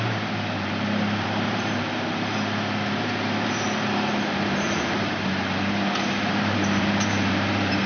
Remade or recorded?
remade